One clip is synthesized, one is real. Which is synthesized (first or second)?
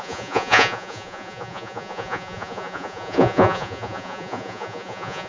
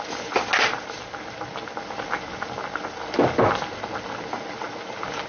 first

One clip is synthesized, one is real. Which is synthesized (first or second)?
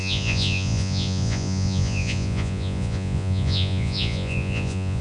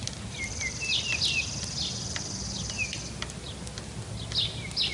first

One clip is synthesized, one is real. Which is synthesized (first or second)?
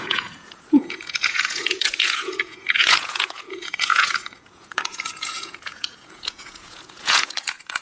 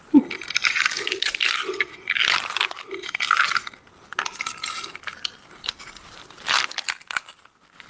first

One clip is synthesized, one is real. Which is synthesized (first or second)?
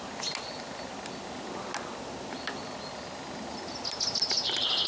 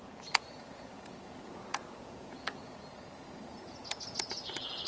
second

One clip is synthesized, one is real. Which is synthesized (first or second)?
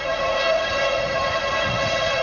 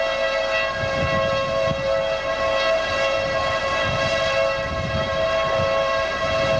first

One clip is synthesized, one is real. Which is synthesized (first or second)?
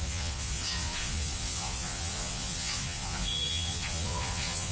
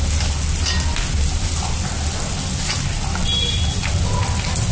first